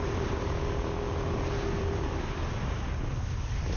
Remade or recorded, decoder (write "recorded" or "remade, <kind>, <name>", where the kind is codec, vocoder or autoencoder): recorded